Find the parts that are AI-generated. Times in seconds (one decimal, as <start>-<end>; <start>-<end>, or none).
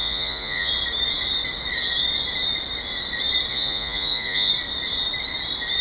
0.0-0.7; 3.5-4.5